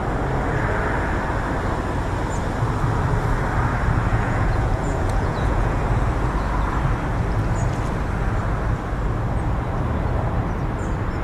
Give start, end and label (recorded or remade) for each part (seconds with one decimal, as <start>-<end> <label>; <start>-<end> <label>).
0.0-4.1 recorded; 4.1-5.8 remade; 5.8-11.2 recorded